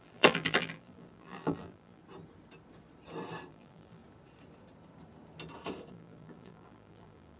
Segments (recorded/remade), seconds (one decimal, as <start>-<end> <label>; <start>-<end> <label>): 0.0-2.0 remade; 2.0-3.5 recorded; 3.5-4.0 remade; 4.0-5.9 recorded; 5.9-7.4 remade